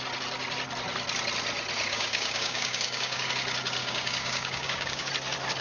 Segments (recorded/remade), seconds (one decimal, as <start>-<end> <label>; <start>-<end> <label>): 0.0-1.9 recorded; 1.9-3.3 remade; 3.3-3.8 recorded; 3.8-5.1 remade; 5.1-5.6 recorded